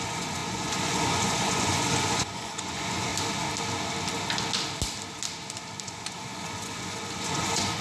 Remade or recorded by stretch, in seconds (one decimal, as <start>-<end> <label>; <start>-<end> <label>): 0.0-3.1 remade; 3.1-5.8 recorded; 5.8-7.8 remade

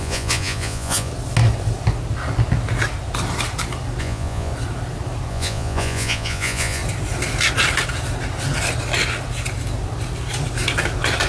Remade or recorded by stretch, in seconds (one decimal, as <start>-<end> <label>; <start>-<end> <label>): 0.0-1.1 remade; 1.1-4.0 recorded; 4.0-4.5 remade; 4.5-5.3 recorded; 5.3-6.8 remade; 6.8-11.3 recorded

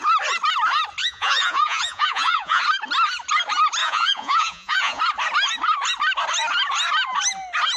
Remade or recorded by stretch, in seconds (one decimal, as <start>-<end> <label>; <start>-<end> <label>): 0.0-1.0 recorded; 1.0-2.6 remade; 2.6-3.8 recorded; 3.8-5.0 remade; 5.0-7.8 recorded

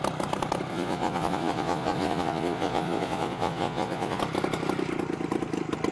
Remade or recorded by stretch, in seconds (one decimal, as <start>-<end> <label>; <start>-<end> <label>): 0.0-0.7 recorded; 0.7-4.2 remade; 4.2-5.9 recorded